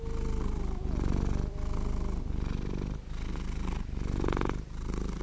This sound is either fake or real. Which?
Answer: real